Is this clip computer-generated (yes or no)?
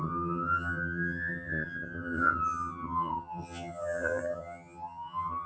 yes